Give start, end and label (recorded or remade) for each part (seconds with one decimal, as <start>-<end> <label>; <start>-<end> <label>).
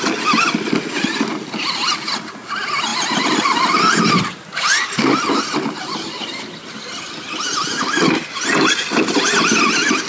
0.0-10.1 recorded